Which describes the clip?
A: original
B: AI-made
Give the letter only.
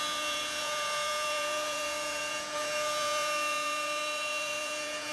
B